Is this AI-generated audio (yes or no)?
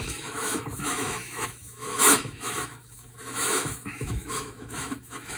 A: yes